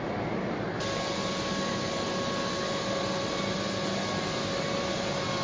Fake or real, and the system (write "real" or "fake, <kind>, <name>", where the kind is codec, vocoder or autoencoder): real